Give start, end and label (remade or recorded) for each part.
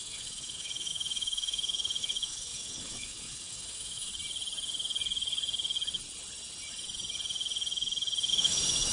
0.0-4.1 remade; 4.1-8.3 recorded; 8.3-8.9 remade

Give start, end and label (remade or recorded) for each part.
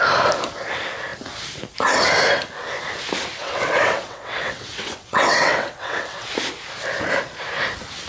0.0-3.4 recorded; 3.4-6.3 remade; 6.3-8.1 recorded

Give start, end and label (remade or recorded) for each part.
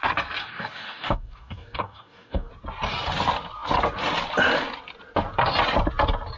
0.0-0.4 recorded; 0.4-2.5 remade; 2.5-6.4 recorded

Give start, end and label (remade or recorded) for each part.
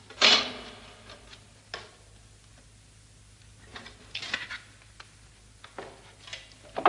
0.0-6.9 recorded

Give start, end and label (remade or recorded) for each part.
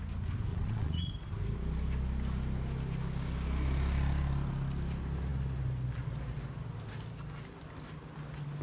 0.0-0.5 recorded; 0.5-1.1 remade; 1.1-8.6 recorded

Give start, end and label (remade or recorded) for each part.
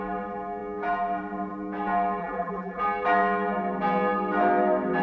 0.0-2.2 recorded; 2.2-2.8 remade; 2.8-5.0 recorded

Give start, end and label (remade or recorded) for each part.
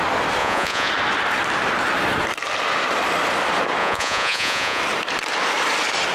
0.0-0.4 recorded; 0.4-0.9 remade; 0.9-3.8 recorded; 3.8-4.8 remade; 4.8-6.1 recorded